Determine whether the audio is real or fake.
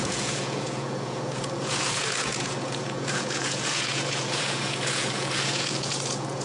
fake